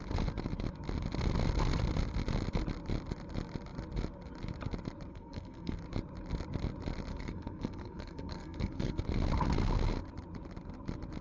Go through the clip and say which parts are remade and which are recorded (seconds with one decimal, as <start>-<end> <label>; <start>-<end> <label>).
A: 0.0-5.1 recorded; 5.1-5.8 remade; 5.8-7.1 recorded; 7.1-9.0 remade; 9.0-11.2 recorded